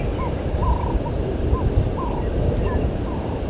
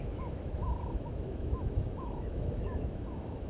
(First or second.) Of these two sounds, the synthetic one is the second